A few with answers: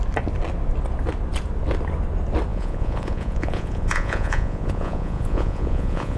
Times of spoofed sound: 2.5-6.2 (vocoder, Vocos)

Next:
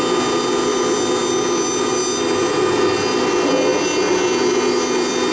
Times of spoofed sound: none

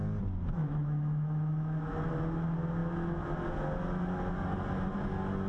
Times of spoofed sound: 0.6-2.1 (autoencoder, DAC-VAE)